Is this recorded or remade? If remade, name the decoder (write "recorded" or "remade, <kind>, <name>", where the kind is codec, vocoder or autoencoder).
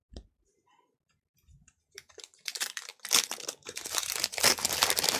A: remade, vocoder, BigVGAN v2